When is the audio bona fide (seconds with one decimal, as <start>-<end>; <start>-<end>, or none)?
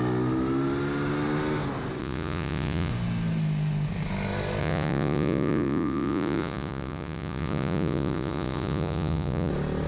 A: 0.0-2.0; 2.9-4.6; 9.5-9.9